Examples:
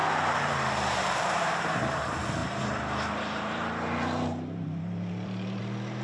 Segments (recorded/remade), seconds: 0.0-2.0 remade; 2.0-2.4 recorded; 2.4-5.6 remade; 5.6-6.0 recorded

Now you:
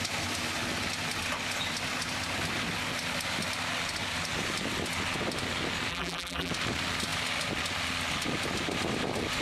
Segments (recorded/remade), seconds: 0.0-5.9 recorded; 5.9-6.5 remade; 6.5-9.4 recorded

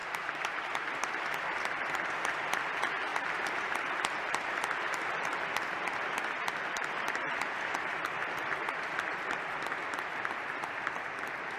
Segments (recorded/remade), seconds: 0.0-0.9 remade; 0.9-11.6 recorded

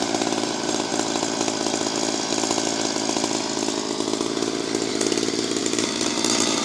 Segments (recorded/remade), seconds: 0.0-0.9 remade; 0.9-4.9 recorded; 4.9-6.6 remade

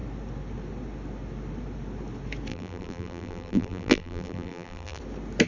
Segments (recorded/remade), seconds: 0.0-2.5 recorded; 2.5-5.0 remade; 5.0-5.5 recorded

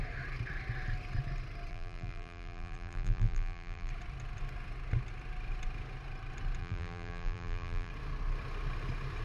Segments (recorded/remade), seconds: 0.0-1.7 recorded; 1.7-3.9 remade; 3.9-6.6 recorded; 6.6-7.9 remade; 7.9-9.2 recorded

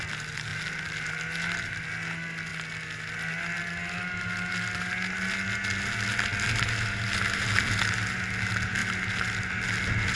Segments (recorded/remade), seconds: 0.0-10.1 recorded

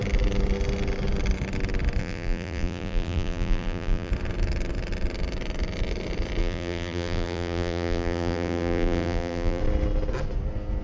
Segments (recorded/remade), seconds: 0.0-2.0 recorded; 2.0-4.1 remade; 4.1-6.4 recorded; 6.4-9.6 remade; 9.6-10.8 recorded